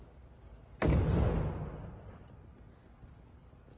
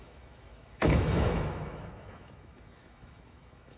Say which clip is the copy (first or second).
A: second